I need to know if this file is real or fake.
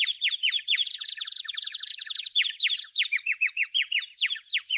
real